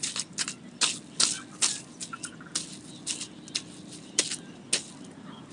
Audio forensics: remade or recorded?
recorded